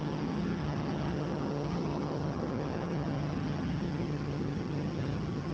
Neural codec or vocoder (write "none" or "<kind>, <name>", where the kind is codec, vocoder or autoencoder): vocoder, HiFi-GAN